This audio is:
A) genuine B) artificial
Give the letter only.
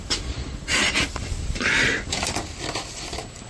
A